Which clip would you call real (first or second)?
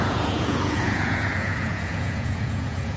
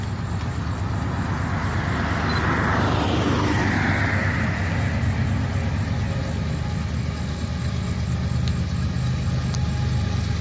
second